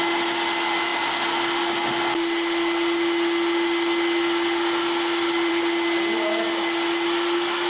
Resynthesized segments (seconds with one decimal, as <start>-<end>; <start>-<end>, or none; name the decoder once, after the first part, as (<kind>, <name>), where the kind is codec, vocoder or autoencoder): none